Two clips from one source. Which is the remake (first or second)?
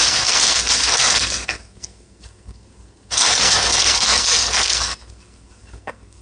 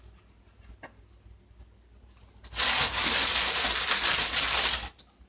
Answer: first